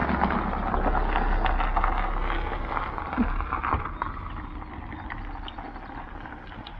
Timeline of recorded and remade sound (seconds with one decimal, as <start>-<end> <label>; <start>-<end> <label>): 0.0-6.8 recorded